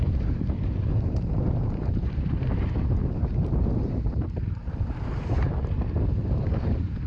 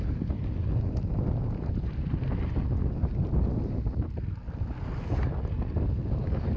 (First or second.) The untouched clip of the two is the second